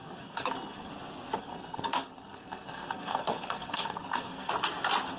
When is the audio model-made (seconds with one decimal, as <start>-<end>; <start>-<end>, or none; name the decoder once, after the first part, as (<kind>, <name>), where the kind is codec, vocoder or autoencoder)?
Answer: 0.0-0.9 (codec, SNAC); 1.4-4.5